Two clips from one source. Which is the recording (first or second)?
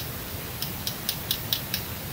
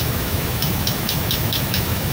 first